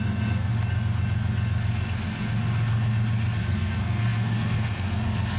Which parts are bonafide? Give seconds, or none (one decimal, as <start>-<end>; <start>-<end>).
0.5-3.4